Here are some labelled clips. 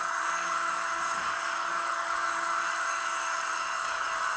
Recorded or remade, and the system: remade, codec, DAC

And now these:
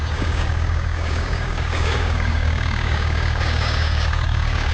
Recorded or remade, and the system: remade, codec, DAC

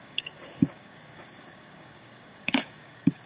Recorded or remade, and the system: remade, codec, DAC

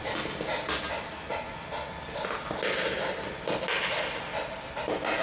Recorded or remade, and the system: recorded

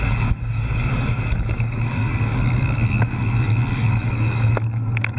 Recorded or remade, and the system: remade, codec, DAC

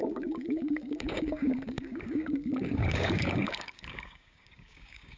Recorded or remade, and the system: remade, codec, DAC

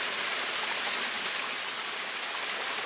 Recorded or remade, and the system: recorded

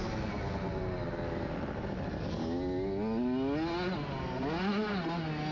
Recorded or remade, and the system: recorded